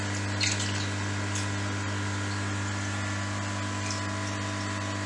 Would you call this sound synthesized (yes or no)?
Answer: no